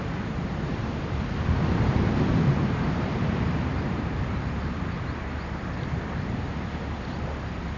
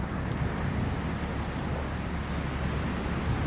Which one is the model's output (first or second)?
first